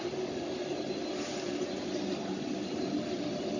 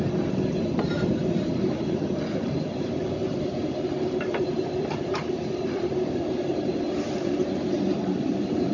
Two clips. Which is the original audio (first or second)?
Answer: first